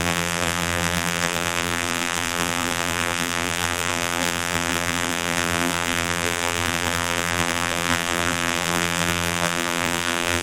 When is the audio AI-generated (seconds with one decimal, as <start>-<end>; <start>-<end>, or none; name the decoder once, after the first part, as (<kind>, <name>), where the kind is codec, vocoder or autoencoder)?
0.0-10.4 (vocoder, BigVGAN v2)

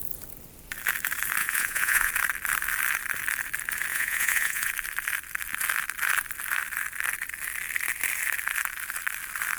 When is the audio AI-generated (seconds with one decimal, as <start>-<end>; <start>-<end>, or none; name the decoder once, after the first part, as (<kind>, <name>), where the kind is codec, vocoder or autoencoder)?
1.4-2.1 (vocoder, Vocos); 3.9-4.7

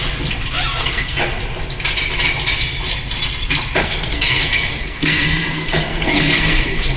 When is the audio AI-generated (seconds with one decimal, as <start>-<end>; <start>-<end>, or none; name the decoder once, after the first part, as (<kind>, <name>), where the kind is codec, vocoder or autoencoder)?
0.8-1.4 (codec, SNAC); 3.8-7.0

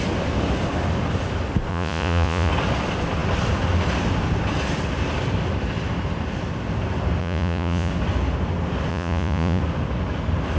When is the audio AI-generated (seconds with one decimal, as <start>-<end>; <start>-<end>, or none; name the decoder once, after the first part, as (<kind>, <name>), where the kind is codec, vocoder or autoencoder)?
1.7-2.5 (vocoder, Vocos); 7.2-7.9; 8.9-9.6

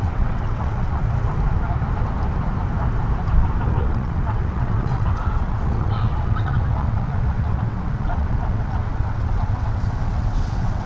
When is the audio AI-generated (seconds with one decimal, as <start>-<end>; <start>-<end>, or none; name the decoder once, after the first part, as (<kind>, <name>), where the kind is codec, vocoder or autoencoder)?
0.0-1.0 (vocoder, WaveNeXt); 3.7-10.9

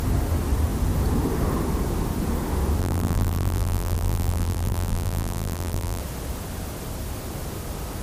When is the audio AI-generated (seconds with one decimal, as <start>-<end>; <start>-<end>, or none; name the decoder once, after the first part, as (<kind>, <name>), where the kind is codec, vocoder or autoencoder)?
2.8-6.0 (vocoder, BigVGAN v2)